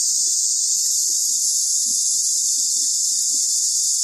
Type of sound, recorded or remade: recorded